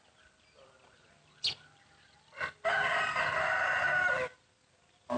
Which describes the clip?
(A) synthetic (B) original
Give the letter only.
B